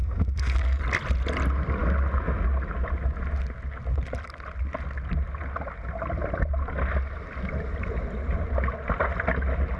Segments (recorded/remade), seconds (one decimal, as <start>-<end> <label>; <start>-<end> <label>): 0.0-0.8 remade; 0.8-9.8 recorded